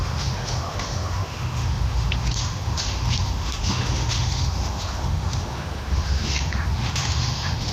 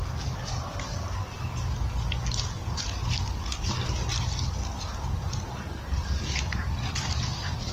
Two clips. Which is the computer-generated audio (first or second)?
first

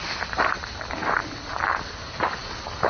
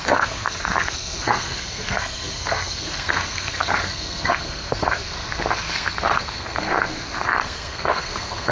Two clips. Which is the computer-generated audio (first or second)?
second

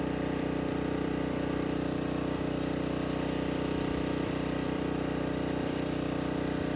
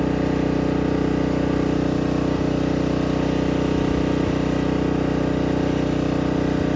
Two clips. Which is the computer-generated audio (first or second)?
first